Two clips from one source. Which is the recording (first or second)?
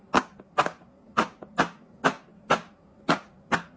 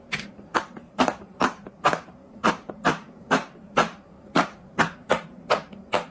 first